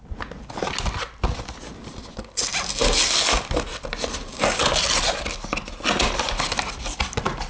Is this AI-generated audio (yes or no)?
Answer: no